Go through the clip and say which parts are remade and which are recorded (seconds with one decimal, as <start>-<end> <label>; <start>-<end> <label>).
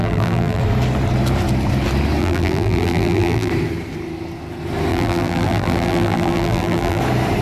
0.0-0.6 remade; 0.6-2.2 recorded; 2.2-3.5 remade; 3.5-4.9 recorded; 4.9-7.0 remade; 7.0-7.4 recorded